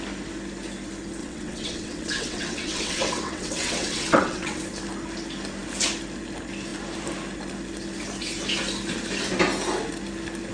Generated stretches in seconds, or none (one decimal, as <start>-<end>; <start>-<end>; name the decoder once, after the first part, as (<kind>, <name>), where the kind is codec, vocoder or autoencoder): 1.2-4.6 (vocoder, WaveNeXt)